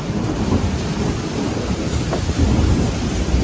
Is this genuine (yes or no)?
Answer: yes